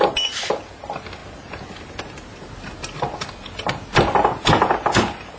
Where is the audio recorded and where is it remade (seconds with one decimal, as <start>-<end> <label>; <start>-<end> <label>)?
0.0-5.4 recorded